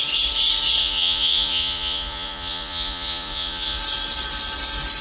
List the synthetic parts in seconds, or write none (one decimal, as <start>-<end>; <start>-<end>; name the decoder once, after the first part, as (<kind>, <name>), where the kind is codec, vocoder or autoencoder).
0.8-3.8 (vocoder, Vocos)